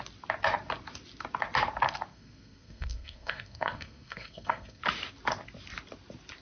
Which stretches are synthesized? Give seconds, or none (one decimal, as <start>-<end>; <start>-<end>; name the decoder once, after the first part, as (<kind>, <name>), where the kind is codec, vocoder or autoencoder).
2.1-4.8 (codec, SNAC)